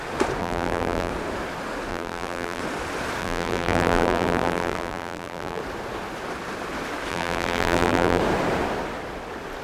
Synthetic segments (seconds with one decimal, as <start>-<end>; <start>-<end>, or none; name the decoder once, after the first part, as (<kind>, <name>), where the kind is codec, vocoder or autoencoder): 0.4-1.1 (vocoder, BigVGAN v2); 1.9-2.6; 3.2-5.6; 7.1-8.2